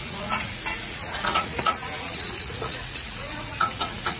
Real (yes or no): no